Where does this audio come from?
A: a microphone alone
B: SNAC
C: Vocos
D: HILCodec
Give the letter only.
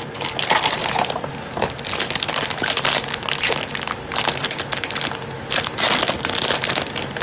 A